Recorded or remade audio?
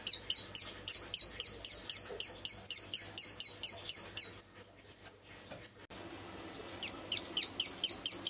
recorded